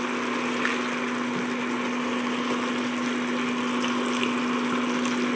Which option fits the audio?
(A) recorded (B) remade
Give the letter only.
A